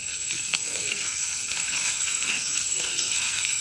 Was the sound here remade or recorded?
remade